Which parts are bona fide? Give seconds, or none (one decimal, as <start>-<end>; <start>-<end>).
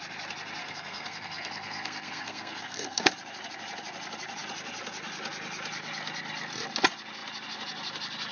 0.0-0.6; 3.1-8.3